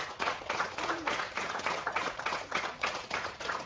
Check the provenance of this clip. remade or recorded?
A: remade